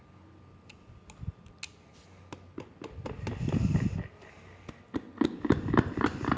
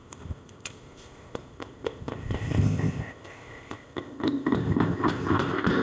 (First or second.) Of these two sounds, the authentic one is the first